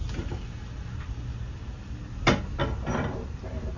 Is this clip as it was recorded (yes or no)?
yes